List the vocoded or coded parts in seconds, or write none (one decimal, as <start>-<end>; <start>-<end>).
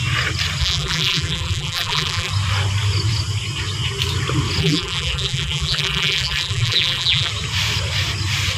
0.6-2.3; 4.6-7.3